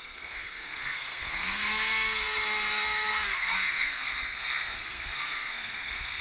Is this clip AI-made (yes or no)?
yes